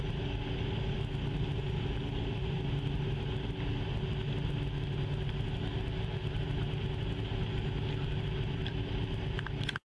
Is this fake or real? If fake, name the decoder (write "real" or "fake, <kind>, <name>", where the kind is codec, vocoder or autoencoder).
real